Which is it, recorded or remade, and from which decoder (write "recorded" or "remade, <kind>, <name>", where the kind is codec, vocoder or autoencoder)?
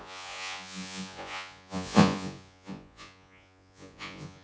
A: remade, vocoder, Vocos